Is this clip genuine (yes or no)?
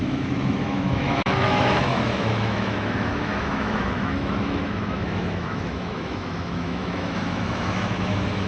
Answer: no